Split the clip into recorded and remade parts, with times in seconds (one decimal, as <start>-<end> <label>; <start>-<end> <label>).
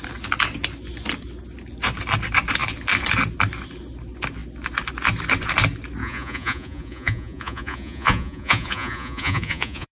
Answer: 0.0-6.0 recorded; 6.0-9.9 remade